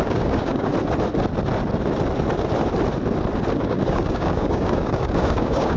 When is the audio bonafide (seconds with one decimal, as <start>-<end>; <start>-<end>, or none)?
0.7-3.6

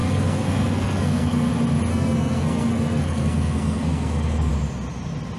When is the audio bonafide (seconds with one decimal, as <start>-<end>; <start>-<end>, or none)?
1.5-1.9; 4.5-5.4

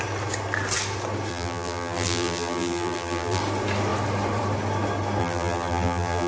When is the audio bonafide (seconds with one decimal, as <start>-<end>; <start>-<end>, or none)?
0.0-1.3; 3.4-5.2

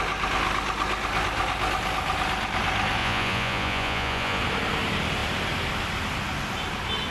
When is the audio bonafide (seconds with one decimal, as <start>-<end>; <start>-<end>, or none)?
0.0-3.0; 4.4-7.1

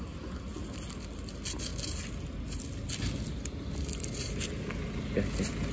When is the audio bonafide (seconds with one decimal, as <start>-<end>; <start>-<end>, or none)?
0.0-5.7

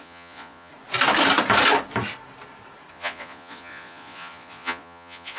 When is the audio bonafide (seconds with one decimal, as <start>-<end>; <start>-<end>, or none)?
0.7-2.9

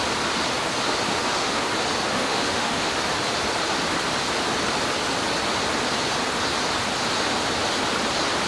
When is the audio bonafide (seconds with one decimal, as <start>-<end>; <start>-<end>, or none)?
0.0-1.1; 1.6-2.1; 2.9-8.5